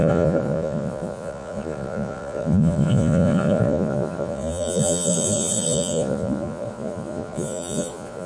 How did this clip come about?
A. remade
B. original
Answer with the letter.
A